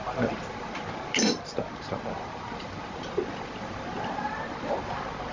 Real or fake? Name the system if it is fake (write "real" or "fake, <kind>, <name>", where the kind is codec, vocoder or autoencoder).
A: fake, vocoder, BigVGAN v2